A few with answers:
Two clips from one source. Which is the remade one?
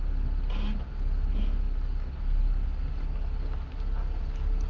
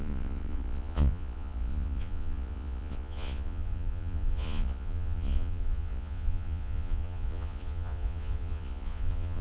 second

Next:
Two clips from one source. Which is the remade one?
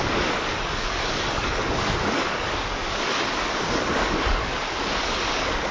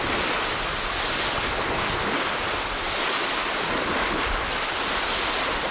first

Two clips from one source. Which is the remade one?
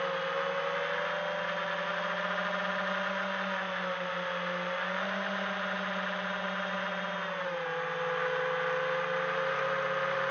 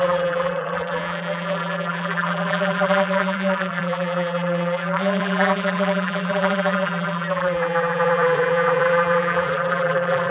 second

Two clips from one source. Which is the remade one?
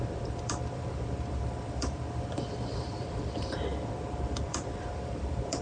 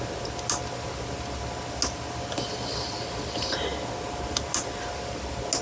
first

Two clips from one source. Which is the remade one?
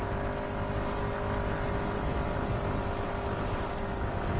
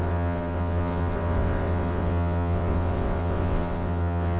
second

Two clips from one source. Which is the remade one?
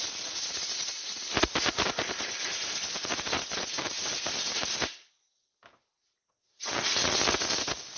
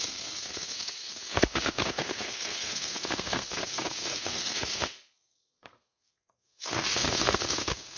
second